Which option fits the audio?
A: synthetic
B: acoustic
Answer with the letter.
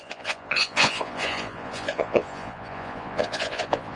A